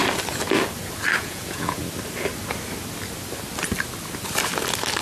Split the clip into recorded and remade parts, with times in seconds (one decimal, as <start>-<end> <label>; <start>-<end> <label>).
0.0-1.2 recorded; 1.2-1.8 remade; 1.8-5.0 recorded